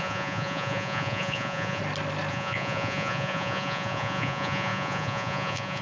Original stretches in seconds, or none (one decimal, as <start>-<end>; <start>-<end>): 1.8-2.3